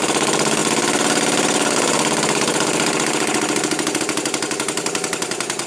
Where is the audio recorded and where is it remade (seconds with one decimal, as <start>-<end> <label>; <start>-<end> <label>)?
0.0-5.7 recorded